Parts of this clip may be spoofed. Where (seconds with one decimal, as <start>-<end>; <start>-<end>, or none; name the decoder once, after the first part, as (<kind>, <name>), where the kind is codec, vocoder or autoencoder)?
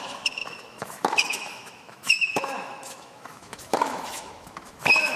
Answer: 0.0-5.2 (autoencoder, DAC-VAE)